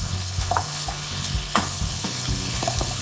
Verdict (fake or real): fake